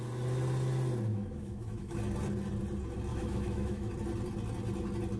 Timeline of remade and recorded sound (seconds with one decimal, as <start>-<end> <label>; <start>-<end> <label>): 0.0-1.1 recorded; 1.1-2.0 remade; 2.0-3.1 recorded; 3.1-3.9 remade; 3.9-5.2 recorded